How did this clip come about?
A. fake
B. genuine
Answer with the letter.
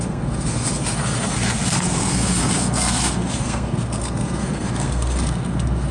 A